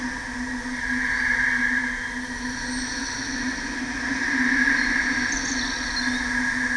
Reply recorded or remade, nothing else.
recorded